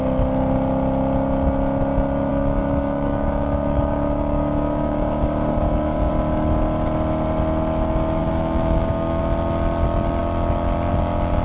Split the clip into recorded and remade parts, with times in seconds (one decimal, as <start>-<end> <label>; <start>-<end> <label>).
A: 0.0-2.3 recorded; 2.3-6.1 remade; 6.1-8.2 recorded; 8.2-9.2 remade; 9.2-11.4 recorded